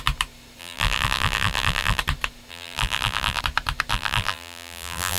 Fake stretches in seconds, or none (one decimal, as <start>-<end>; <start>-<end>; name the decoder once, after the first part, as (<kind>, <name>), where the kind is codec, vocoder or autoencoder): 0.6-2.0 (vocoder, BigVGAN v2); 2.5-3.4; 3.9-5.2